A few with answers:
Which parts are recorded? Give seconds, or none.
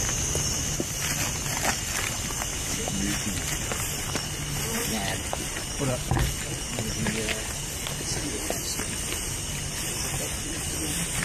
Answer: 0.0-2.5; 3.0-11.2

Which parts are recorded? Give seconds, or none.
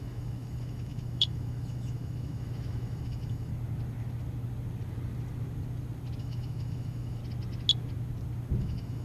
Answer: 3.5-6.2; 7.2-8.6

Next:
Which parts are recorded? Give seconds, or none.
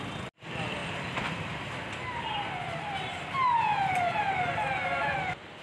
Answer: 0.0-5.6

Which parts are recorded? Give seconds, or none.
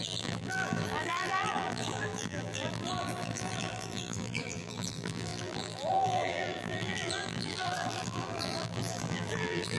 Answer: none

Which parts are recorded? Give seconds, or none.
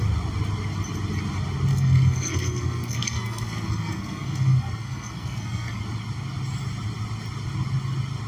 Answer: 0.0-1.7; 5.8-8.3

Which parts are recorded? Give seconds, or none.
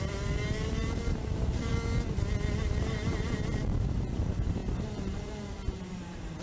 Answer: 1.7-2.8